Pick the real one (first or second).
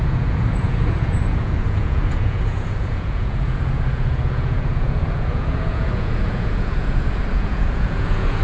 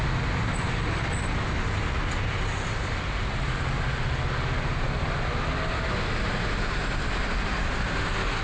second